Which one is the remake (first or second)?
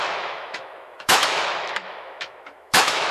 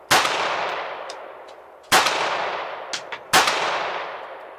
first